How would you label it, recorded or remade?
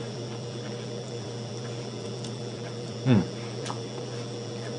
remade